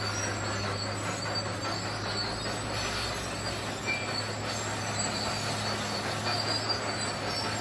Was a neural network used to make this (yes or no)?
no